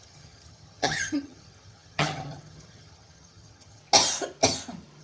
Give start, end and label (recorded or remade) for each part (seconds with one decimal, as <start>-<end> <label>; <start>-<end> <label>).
0.0-3.8 remade; 3.8-5.0 recorded